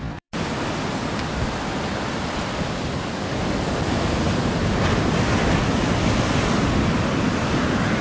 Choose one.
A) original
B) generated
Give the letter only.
A